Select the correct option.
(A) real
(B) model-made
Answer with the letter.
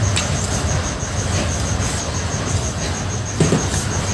A